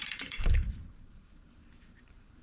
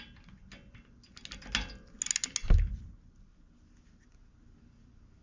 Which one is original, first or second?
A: second